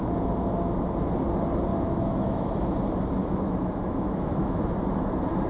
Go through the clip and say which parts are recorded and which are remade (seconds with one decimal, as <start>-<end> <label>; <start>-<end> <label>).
0.0-1.7 recorded; 1.7-2.5 remade; 2.5-3.2 recorded; 3.2-4.6 remade; 4.6-5.5 recorded